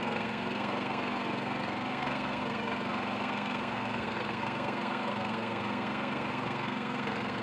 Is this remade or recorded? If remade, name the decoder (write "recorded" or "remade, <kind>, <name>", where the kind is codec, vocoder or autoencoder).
remade, codec, SNAC